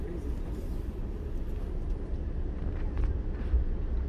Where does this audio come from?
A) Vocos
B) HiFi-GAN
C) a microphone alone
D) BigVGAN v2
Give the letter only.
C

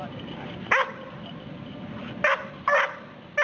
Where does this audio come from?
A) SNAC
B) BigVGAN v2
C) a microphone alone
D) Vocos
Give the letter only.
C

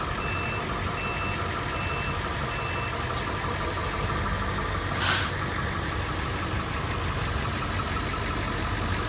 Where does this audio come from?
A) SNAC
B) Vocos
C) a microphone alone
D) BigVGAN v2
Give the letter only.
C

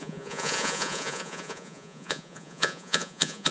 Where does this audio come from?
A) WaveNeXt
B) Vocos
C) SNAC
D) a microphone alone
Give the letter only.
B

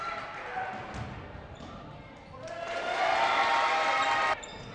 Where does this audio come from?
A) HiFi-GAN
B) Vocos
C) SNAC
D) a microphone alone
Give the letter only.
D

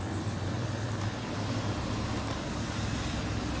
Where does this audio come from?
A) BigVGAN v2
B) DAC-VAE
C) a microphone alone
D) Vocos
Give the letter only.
C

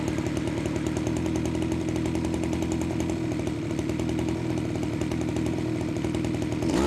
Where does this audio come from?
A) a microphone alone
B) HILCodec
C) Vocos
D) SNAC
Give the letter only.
A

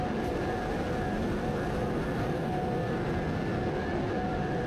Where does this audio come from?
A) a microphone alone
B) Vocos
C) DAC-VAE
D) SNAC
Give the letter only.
A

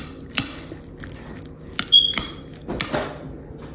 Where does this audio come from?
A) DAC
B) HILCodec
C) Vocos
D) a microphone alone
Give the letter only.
D